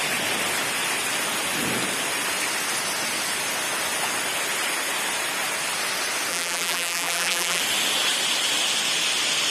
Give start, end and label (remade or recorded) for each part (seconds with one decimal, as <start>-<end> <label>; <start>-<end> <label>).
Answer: 0.0-6.3 recorded; 6.3-7.6 remade; 7.6-9.5 recorded